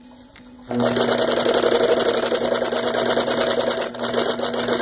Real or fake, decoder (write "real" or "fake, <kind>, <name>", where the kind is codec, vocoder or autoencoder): real